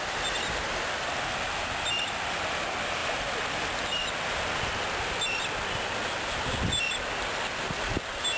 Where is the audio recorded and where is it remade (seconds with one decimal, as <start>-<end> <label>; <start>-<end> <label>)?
0.0-8.4 recorded